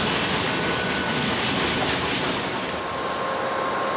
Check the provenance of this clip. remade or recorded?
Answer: recorded